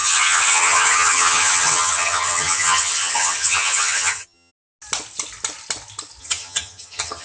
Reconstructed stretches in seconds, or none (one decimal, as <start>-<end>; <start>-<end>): 0.0-4.5; 6.2-7.2

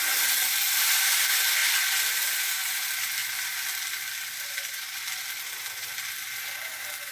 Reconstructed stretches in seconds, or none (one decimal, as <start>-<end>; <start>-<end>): 3.2-6.1